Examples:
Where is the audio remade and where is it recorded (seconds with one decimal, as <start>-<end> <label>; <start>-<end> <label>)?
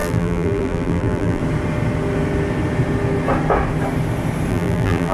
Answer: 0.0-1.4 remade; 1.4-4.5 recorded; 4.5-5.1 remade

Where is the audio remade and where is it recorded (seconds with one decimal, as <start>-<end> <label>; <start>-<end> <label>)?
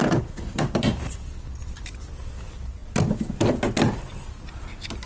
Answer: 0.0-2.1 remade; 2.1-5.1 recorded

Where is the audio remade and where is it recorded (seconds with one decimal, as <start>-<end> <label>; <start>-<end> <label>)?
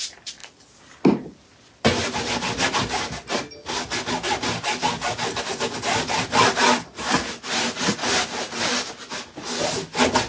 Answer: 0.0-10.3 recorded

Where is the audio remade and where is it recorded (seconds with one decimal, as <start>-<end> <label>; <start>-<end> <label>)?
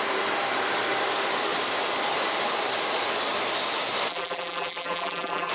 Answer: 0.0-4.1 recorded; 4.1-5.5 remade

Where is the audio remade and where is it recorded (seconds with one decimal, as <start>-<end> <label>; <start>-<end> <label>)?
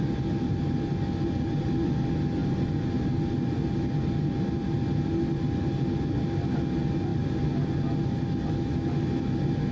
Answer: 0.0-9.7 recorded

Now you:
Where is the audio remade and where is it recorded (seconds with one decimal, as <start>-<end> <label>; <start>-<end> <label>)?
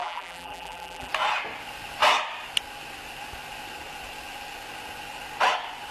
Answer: 0.0-1.1 remade; 1.1-5.9 recorded